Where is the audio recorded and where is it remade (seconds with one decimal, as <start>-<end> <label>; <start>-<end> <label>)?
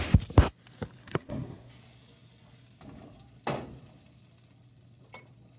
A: 0.0-1.0 recorded; 1.0-1.7 remade; 1.7-5.6 recorded